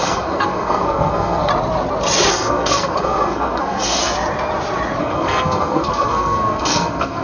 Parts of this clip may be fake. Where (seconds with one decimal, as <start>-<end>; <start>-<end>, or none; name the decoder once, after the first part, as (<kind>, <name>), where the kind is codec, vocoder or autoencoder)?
0.0-1.5 (codec, SNAC); 2.3-4.0; 5.0-7.2